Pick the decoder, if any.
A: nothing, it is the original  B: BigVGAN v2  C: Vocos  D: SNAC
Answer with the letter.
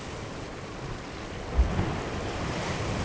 A